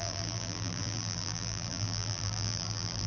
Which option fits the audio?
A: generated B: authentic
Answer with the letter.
A